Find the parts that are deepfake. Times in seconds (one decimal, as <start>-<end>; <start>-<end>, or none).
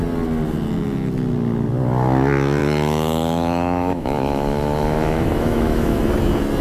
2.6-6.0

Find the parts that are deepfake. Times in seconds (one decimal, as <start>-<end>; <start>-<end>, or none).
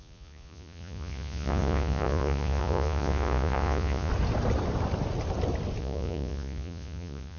0.0-4.1; 5.8-7.4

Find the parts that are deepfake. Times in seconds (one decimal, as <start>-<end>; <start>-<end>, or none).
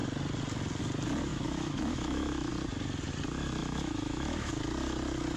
1.3-2.5; 3.6-4.5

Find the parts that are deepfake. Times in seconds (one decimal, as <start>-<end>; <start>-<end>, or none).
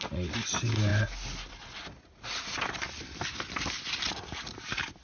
none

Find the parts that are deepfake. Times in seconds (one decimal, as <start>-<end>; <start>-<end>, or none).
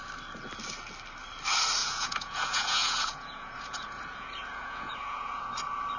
1.8-5.4